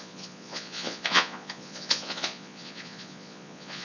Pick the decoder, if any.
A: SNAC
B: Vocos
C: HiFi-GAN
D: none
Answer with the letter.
B